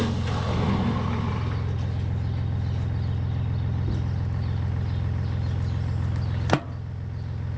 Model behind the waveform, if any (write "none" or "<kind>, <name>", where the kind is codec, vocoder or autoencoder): none